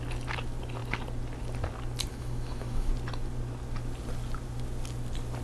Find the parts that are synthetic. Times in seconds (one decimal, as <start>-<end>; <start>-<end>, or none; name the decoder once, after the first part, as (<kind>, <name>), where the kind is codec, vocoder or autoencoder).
2.1-2.9 (autoencoder, DAC-VAE)